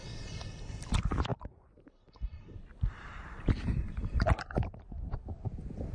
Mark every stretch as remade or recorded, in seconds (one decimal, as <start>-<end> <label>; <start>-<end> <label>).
0.0-1.3 recorded; 1.3-4.4 remade; 4.4-5.9 recorded